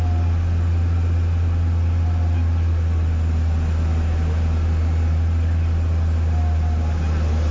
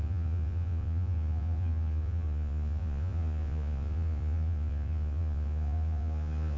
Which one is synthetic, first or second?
second